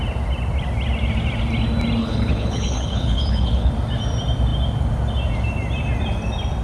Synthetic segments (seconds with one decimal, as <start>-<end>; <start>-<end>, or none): 2.0-3.7